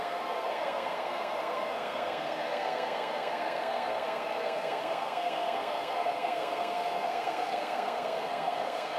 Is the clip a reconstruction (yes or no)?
yes